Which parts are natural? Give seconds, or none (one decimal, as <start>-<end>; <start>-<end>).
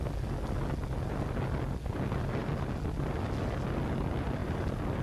0.0-5.0